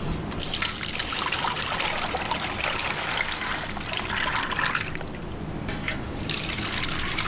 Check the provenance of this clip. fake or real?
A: real